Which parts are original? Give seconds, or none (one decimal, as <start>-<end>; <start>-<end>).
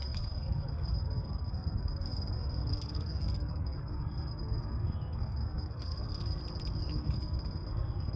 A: 6.4-6.9